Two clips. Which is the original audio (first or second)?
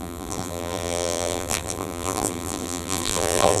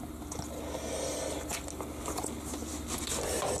second